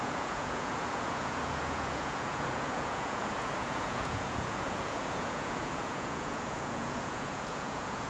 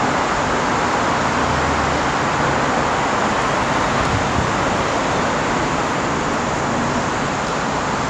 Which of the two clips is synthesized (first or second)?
first